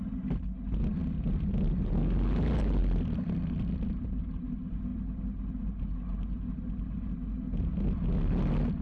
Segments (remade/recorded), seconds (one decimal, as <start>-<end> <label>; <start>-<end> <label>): 0.0-1.0 recorded; 1.0-2.0 remade; 2.0-2.8 recorded; 2.8-4.2 remade; 4.2-4.9 recorded; 4.9-5.8 remade; 5.8-8.8 recorded